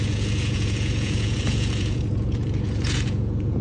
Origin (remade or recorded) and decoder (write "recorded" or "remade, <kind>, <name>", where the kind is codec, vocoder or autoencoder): remade, vocoder, Vocos